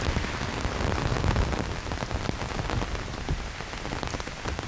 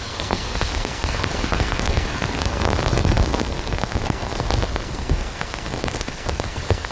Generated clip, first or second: second